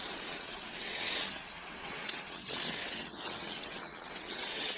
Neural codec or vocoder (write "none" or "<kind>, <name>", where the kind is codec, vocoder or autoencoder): vocoder, WaveNeXt